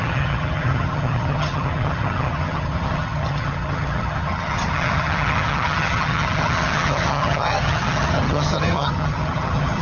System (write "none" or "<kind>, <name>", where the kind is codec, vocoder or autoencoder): vocoder, HiFi-GAN